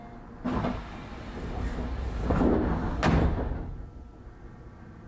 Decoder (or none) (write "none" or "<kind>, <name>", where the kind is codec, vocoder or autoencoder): none